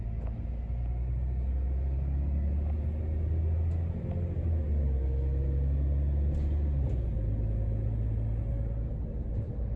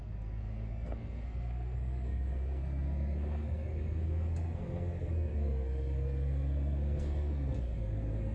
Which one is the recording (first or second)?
first